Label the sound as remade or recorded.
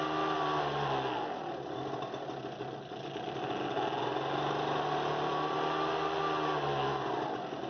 recorded